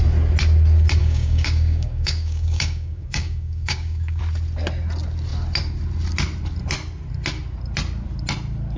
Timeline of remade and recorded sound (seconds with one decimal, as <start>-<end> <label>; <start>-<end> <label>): 0.0-1.0 recorded; 1.0-4.2 remade; 4.2-8.8 recorded